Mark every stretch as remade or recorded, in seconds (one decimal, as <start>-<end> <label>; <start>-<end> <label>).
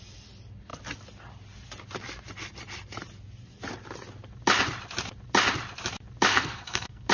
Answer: 0.0-6.3 recorded; 6.3-7.1 remade